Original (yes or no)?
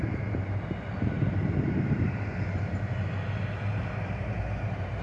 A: yes